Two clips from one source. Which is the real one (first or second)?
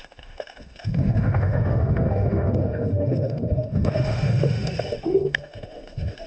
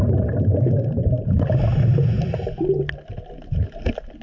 second